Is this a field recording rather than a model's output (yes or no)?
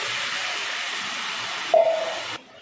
yes